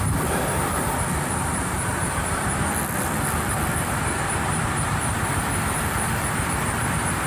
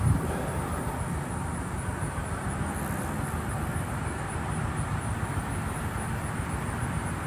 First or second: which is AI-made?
first